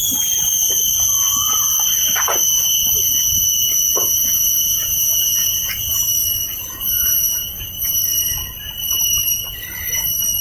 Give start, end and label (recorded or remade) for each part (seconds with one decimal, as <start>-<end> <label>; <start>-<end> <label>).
0.0-4.0 recorded; 4.0-5.9 remade; 5.9-6.5 recorded; 6.5-7.7 remade; 7.7-10.4 recorded

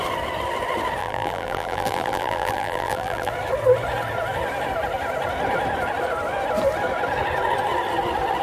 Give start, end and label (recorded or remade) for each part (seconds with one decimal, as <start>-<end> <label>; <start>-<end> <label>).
0.0-1.0 recorded; 1.0-3.3 remade; 3.3-8.4 recorded

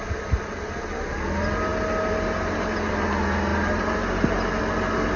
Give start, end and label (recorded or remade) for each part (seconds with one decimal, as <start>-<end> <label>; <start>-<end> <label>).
0.0-5.2 recorded

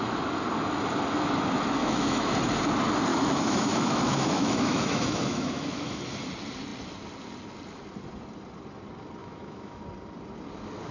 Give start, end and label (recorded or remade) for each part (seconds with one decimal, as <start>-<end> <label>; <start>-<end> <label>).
0.0-1.8 recorded; 1.8-2.3 remade; 2.3-3.1 recorded; 3.1-6.0 remade; 6.0-9.2 recorded; 9.2-9.8 remade; 9.8-10.9 recorded